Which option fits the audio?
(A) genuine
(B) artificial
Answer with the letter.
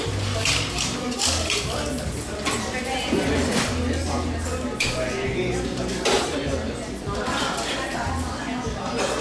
A